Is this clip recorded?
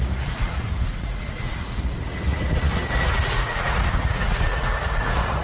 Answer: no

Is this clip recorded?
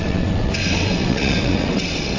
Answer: no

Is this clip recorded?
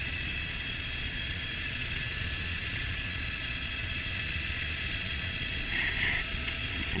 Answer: no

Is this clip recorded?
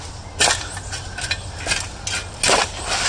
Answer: yes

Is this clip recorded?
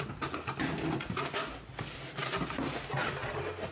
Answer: yes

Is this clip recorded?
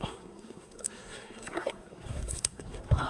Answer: no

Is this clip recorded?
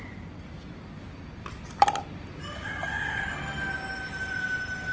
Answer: yes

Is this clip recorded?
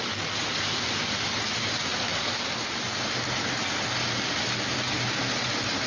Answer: yes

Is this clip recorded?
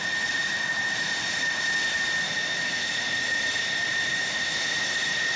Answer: yes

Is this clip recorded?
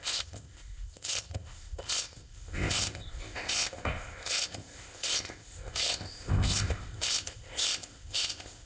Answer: no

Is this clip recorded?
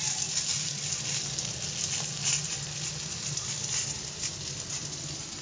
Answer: yes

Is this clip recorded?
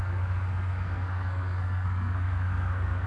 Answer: no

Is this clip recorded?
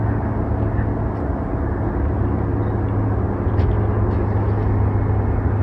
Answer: yes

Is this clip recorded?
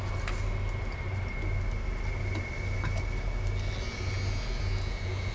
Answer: yes